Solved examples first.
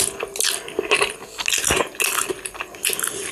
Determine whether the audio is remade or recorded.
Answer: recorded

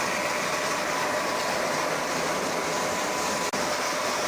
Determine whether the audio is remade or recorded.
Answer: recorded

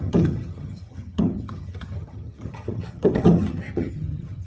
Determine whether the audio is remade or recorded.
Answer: remade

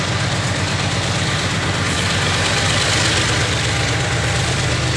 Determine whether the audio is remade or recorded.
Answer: remade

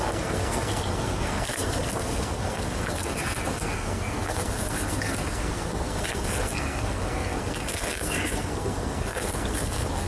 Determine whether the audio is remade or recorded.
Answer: remade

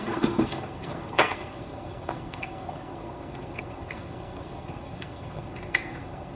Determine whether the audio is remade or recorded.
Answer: remade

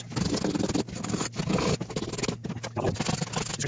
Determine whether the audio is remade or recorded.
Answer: recorded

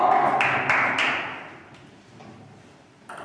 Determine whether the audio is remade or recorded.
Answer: recorded